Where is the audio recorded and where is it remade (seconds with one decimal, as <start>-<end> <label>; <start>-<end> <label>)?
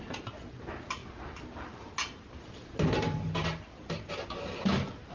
0.0-5.1 recorded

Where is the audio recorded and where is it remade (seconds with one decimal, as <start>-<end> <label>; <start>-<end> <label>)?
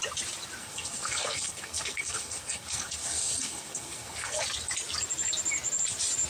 0.0-0.6 recorded; 0.6-4.4 remade; 4.4-6.3 recorded